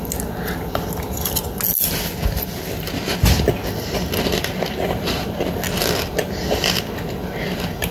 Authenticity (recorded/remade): recorded